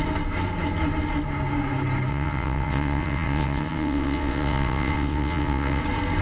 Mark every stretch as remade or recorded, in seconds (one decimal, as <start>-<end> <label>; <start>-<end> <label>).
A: 0.0-2.1 recorded; 2.1-5.8 remade; 5.8-6.2 recorded